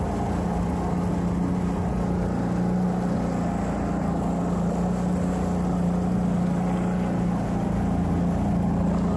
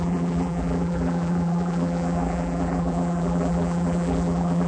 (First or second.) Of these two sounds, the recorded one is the first